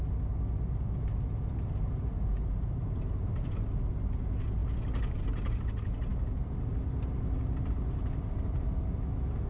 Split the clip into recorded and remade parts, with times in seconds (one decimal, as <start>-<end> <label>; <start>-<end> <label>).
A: 0.0-9.5 recorded